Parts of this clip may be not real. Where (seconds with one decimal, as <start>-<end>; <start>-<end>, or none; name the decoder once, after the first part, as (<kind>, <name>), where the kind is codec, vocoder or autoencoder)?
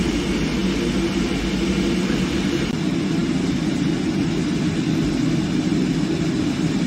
none